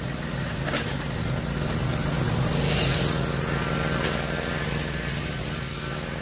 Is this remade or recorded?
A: recorded